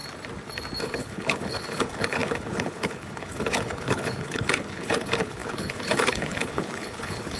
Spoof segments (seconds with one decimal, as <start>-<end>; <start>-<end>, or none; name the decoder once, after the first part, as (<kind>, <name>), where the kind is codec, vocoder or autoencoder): 0.8-7.4 (codec, HILCodec)